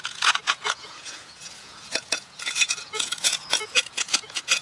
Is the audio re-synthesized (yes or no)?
yes